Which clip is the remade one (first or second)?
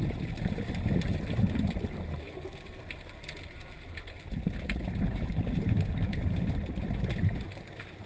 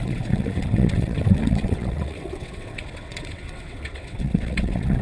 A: second